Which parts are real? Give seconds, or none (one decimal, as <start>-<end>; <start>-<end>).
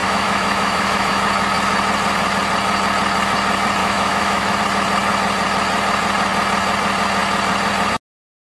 1.2-3.8; 4.6-8.5